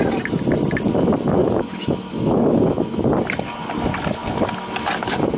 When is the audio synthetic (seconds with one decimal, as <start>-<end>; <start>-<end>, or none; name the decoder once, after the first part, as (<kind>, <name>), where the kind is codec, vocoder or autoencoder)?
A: 1.4-3.0 (autoencoder, DAC-VAE)